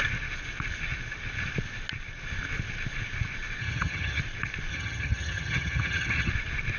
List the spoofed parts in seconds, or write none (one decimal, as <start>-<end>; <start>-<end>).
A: 3.6-4.2; 4.7-6.3